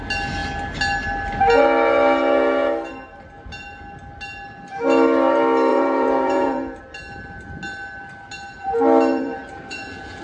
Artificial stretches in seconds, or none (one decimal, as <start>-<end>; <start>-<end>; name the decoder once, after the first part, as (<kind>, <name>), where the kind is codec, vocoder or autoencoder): 5.7-6.8 (vocoder, Vocos); 9.1-10.2